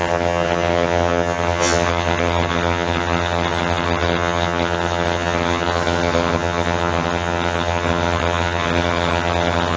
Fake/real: fake